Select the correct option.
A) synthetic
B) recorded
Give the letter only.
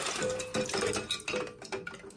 B